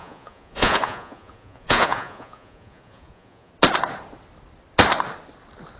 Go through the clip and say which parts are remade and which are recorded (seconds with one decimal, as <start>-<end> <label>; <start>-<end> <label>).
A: 0.0-3.5 remade; 3.5-5.8 recorded